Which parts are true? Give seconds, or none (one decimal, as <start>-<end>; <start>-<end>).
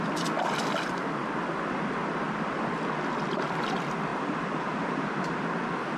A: 0.0-4.1; 5.2-6.0